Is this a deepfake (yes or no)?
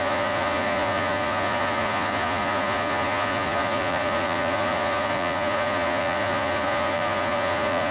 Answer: yes